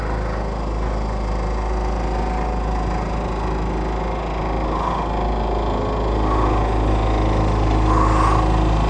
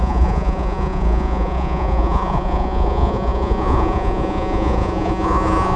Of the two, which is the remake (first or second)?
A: second